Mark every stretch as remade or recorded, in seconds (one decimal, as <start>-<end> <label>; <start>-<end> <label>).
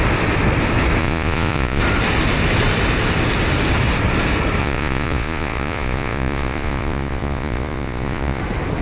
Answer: 0.0-1.0 recorded; 1.0-1.8 remade; 1.8-4.6 recorded; 4.6-8.4 remade; 8.4-8.8 recorded